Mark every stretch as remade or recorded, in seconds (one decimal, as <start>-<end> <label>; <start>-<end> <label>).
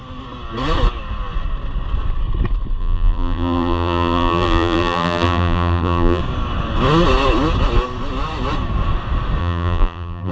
0.0-2.8 recorded; 2.8-6.2 remade; 6.2-9.4 recorded; 9.4-10.3 remade